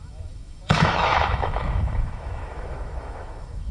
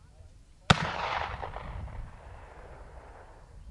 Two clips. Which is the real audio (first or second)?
second